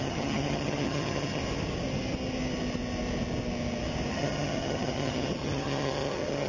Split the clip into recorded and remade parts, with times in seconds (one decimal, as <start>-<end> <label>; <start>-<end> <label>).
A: 0.0-1.4 remade; 1.4-4.1 recorded; 4.1-6.5 remade